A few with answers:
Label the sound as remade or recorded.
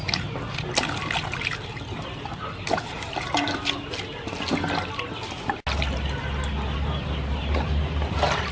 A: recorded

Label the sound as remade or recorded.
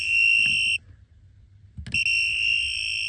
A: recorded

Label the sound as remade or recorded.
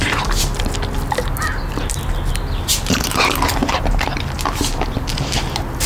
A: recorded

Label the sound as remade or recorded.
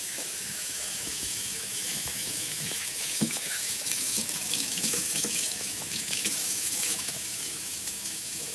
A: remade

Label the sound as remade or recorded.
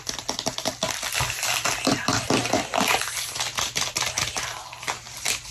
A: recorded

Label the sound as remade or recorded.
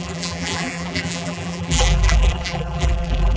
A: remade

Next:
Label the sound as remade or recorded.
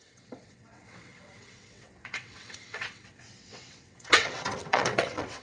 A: remade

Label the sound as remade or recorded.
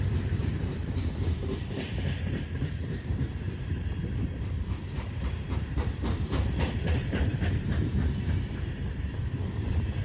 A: remade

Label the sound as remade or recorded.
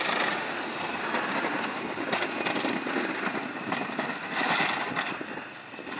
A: recorded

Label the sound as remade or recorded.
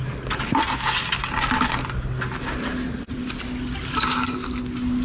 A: recorded